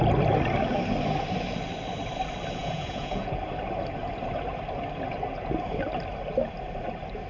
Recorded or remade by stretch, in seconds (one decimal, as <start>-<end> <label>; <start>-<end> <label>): 0.0-2.6 recorded; 2.6-3.4 remade; 3.4-7.3 recorded